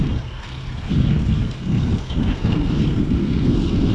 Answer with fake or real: fake